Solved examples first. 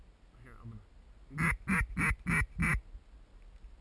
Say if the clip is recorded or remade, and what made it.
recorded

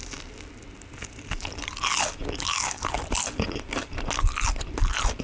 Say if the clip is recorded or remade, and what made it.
recorded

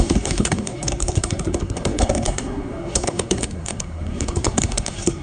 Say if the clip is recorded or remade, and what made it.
remade, codec, SNAC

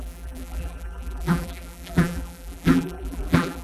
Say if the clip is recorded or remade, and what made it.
remade, vocoder, BigVGAN v2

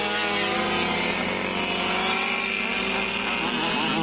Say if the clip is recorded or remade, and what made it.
recorded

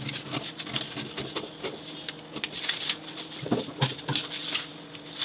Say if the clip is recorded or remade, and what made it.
recorded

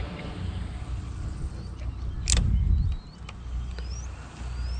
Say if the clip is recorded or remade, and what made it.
recorded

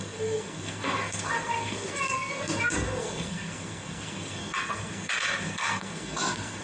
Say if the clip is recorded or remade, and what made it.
remade, codec, SNAC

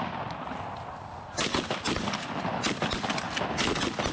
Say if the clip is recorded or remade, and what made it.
recorded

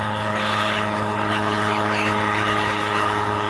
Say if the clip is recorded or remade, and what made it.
remade, codec, HILCodec